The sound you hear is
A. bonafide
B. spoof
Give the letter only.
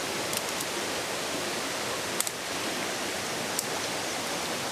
A